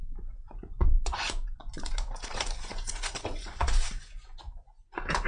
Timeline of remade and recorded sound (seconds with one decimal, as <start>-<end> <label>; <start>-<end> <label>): 0.0-5.3 remade